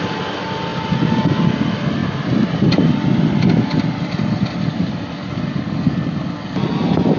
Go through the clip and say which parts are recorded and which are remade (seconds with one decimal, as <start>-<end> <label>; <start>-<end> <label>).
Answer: 0.0-2.0 recorded; 2.0-6.3 remade; 6.3-7.2 recorded